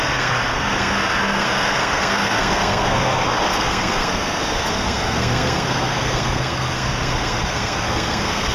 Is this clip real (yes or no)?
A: no